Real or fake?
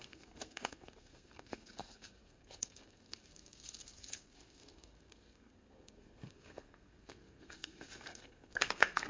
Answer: fake